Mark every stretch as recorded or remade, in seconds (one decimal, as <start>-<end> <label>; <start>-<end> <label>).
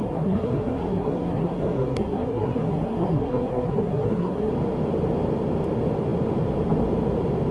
0.0-4.5 remade; 4.5-7.5 recorded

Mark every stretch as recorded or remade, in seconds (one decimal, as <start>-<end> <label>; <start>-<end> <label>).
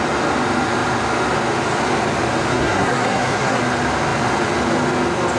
0.0-2.5 recorded; 2.5-3.6 remade; 3.6-5.4 recorded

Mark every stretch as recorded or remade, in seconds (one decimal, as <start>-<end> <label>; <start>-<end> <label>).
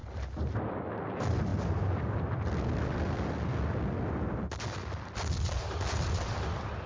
0.0-6.9 recorded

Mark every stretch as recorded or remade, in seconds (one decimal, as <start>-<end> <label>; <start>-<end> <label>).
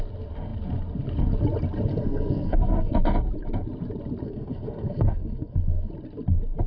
0.0-1.9 recorded; 1.9-2.9 remade; 2.9-4.2 recorded; 4.2-5.9 remade; 5.9-6.7 recorded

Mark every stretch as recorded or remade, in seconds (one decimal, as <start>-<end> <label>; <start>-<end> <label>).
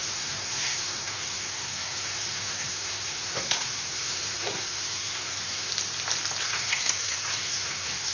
0.0-5.7 remade; 5.7-6.4 recorded; 6.4-8.1 remade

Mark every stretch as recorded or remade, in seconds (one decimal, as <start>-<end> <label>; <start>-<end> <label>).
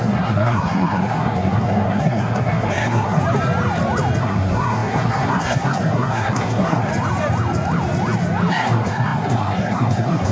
0.0-3.2 remade; 3.2-4.2 recorded; 4.2-6.9 remade; 6.9-8.5 recorded; 8.5-10.3 remade